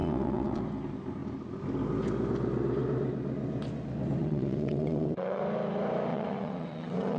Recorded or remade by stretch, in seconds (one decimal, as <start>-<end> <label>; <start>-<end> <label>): 0.0-0.6 remade; 0.6-4.2 recorded; 4.2-5.4 remade; 5.4-6.1 recorded; 6.1-7.2 remade